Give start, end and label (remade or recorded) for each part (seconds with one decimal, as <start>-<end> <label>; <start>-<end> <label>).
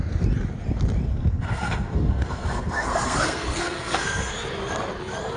0.0-1.1 recorded; 1.1-4.3 remade; 4.3-5.4 recorded